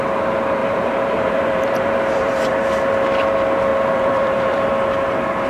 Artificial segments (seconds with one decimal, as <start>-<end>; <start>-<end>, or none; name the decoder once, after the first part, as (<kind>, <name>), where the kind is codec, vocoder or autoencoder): 0.6-2.6 (vocoder, BigVGAN v2); 3.7-4.7